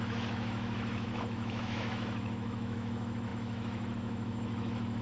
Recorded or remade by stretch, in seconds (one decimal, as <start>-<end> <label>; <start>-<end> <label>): 0.0-5.0 remade